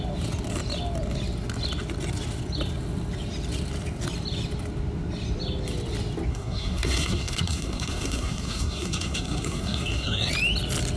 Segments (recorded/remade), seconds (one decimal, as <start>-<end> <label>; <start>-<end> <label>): 0.0-6.3 recorded; 6.3-10.3 remade; 10.3-11.0 recorded